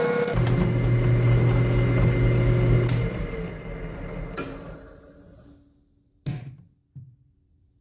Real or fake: real